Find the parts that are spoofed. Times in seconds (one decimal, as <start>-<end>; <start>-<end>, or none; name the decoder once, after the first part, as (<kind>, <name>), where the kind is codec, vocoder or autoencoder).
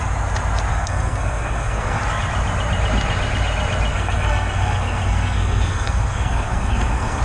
0.7-2.0 (codec, SNAC); 3.9-7.2